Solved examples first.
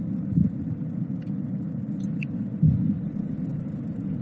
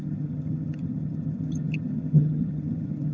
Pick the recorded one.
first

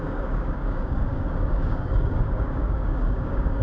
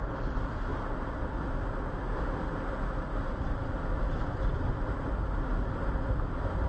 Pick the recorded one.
second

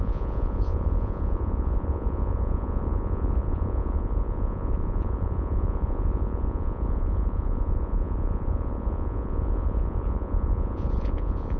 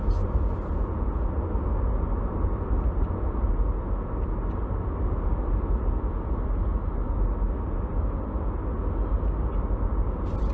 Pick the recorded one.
second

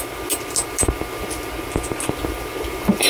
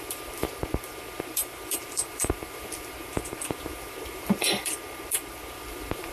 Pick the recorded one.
first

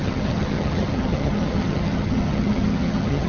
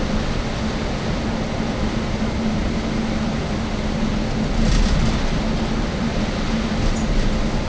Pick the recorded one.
second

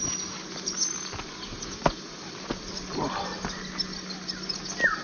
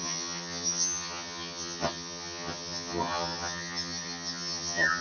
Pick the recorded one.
first